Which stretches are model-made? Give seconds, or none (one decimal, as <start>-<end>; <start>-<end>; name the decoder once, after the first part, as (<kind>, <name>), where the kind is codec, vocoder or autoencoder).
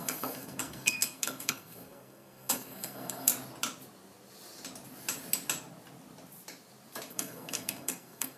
0.0-3.3 (codec, SNAC); 7.1-8.4